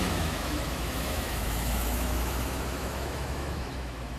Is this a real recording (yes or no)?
no